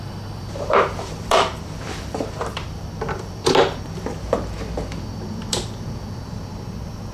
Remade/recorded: remade